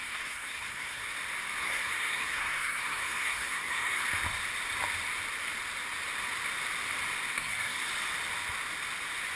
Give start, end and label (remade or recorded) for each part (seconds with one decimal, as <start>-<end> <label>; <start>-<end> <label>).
0.0-1.0 remade; 1.0-1.6 recorded; 1.6-4.0 remade; 4.0-7.3 recorded; 7.3-7.9 remade; 7.9-9.4 recorded